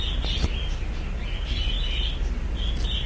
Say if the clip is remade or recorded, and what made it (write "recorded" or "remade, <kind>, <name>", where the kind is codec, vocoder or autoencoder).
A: recorded